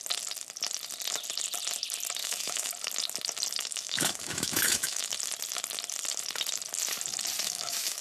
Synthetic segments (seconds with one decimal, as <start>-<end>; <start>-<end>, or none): 2.2-2.7; 3.6-5.1; 7.4-8.0